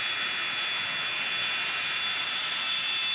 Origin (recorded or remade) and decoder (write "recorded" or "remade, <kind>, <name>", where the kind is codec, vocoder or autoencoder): recorded